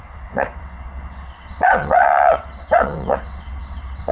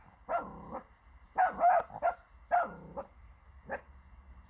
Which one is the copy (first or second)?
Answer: first